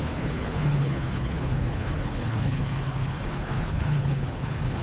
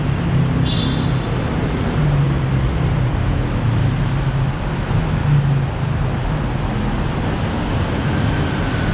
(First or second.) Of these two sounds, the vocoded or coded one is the first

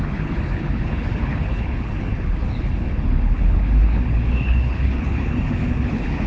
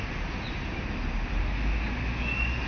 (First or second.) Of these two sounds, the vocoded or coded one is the first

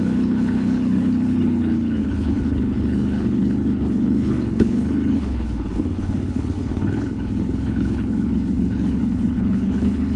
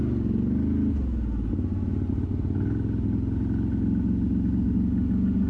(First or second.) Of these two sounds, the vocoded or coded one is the first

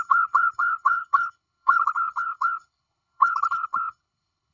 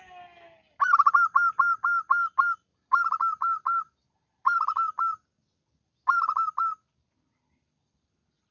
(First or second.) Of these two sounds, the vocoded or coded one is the first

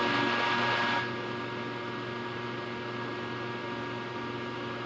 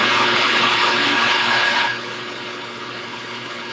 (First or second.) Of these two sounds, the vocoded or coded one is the second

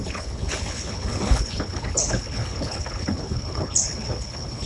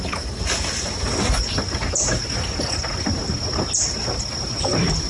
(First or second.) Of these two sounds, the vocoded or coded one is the first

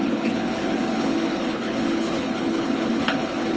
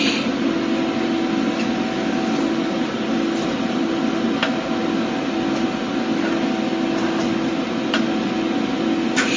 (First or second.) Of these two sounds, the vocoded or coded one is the first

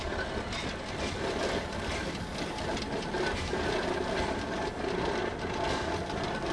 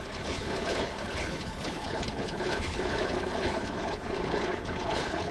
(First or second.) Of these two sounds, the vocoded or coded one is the second